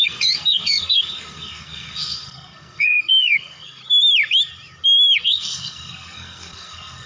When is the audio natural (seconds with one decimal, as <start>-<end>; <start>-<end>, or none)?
3.8-5.2

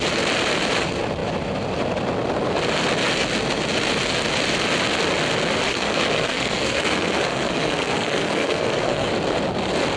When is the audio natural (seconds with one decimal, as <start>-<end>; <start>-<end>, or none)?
0.0-5.7; 9.1-10.0

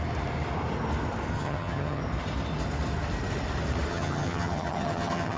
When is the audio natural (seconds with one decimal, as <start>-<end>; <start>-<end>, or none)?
0.0-1.3; 2.0-3.9

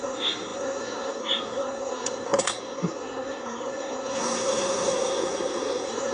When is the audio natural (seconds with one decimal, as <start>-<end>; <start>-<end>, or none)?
none

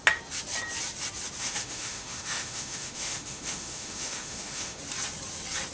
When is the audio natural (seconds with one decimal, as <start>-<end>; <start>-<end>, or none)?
0.0-1.4; 4.8-5.7